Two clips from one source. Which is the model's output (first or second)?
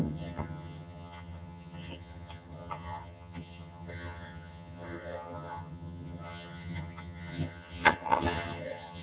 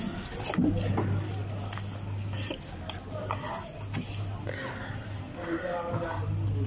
first